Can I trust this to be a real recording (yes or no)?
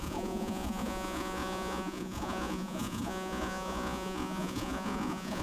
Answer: no